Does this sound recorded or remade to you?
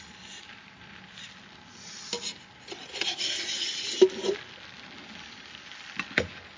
recorded